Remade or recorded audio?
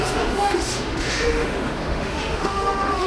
remade